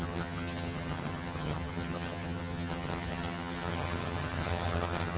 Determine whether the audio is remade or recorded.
remade